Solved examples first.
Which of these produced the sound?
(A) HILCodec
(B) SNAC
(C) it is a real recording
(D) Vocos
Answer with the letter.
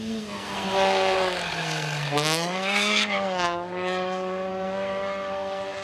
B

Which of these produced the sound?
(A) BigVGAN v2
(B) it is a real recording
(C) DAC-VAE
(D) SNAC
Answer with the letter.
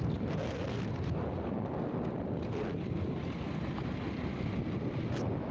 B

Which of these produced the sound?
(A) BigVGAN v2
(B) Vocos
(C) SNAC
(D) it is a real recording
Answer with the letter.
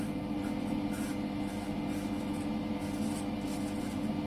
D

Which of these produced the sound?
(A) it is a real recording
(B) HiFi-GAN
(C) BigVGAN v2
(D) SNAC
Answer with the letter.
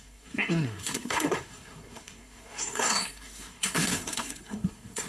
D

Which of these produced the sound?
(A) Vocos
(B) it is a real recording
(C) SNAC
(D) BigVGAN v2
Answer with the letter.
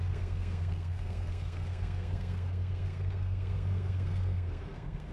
C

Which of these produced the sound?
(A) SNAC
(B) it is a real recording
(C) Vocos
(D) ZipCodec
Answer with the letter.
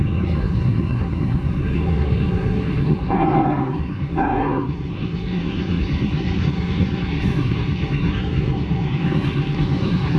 A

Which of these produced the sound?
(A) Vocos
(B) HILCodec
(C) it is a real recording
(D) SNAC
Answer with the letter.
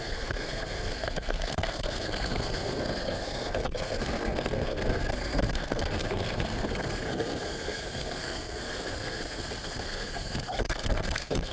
D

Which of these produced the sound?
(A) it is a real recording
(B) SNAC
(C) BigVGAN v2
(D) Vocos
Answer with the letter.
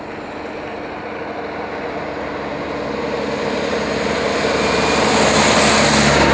A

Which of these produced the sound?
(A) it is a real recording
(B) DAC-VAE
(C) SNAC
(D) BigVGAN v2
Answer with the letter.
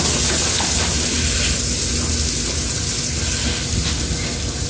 A